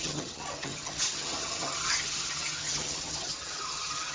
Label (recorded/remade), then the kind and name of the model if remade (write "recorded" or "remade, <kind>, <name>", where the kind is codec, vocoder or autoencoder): remade, vocoder, HiFi-GAN